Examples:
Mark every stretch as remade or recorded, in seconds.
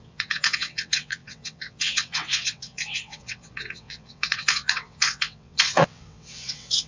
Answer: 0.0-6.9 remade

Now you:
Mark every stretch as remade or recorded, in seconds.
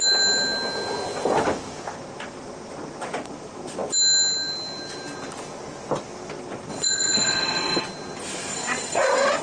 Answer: 0.0-6.7 recorded; 6.7-7.8 remade; 7.8-8.5 recorded; 8.5-9.4 remade